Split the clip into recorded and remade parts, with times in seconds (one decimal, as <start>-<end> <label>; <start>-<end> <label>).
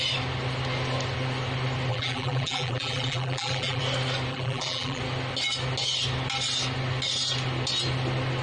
0.0-1.9 recorded; 1.9-3.8 remade; 3.8-4.3 recorded; 4.3-5.0 remade; 5.0-8.4 recorded